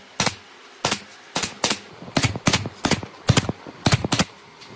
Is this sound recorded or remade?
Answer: recorded